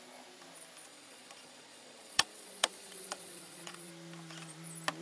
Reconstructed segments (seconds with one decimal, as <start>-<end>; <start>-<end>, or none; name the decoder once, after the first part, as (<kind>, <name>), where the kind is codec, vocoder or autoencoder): 0.9-3.9 (vocoder, Vocos)